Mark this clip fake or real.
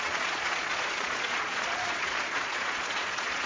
fake